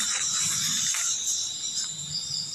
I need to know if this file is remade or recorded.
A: remade